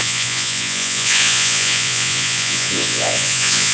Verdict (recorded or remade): remade